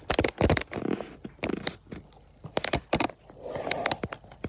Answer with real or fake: real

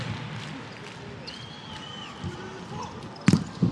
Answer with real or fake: real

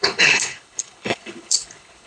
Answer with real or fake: fake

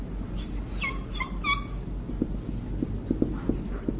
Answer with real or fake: real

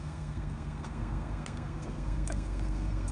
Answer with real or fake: fake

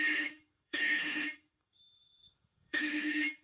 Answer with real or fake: fake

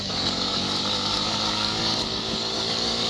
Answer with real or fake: fake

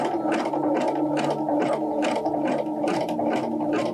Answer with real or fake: real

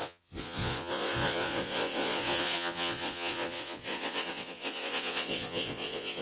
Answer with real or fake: fake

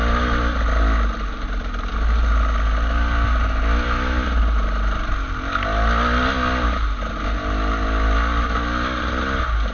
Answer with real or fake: real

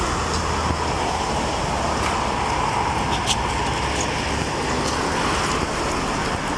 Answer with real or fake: real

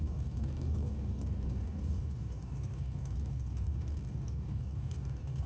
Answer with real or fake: fake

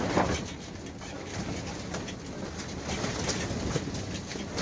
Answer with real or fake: real